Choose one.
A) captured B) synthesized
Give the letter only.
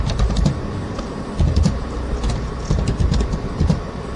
A